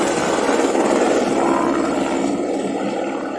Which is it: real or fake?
real